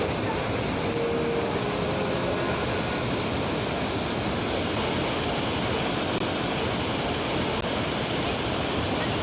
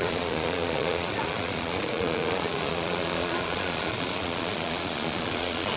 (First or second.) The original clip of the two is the first